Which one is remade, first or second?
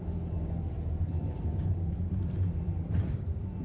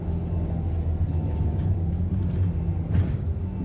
first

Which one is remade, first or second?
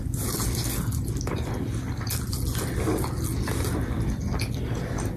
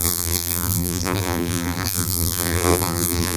second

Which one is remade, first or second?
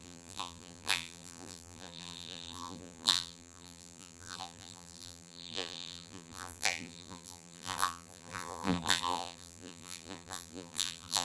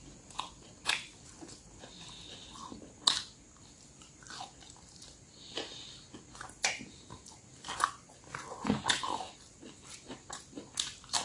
first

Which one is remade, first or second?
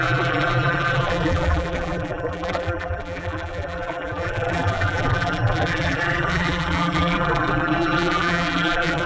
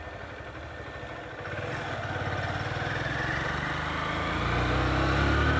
first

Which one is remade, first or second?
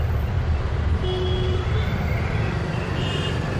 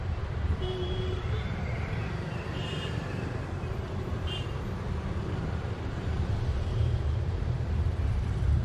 second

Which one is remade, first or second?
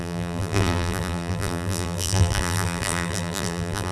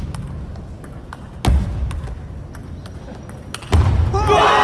first